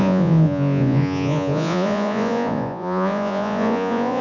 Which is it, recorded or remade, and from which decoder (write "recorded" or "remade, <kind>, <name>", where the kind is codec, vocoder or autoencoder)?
remade, vocoder, Vocos